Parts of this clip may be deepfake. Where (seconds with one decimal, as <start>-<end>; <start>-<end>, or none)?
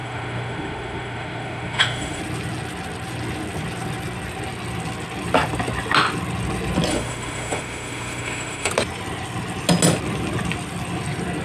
0.0-2.2; 6.9-8.7